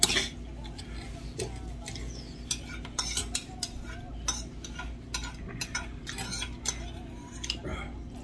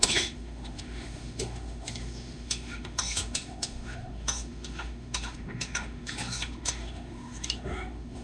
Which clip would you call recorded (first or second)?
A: first